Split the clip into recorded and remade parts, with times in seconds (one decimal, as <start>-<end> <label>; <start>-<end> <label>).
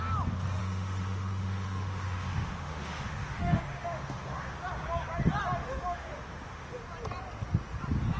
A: 0.0-0.6 recorded; 0.6-4.6 remade; 4.6-5.6 recorded; 5.6-6.8 remade; 6.8-8.2 recorded